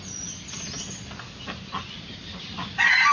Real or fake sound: real